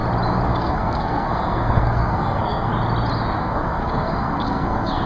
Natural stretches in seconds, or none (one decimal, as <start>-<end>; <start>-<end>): 0.0-0.5; 2.7-3.4